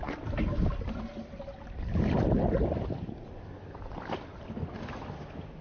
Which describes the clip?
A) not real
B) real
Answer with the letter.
B